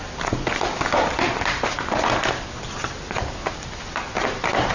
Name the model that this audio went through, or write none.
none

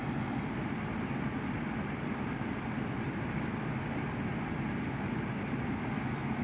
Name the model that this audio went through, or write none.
none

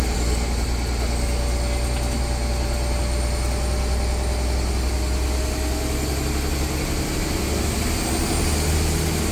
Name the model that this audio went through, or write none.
none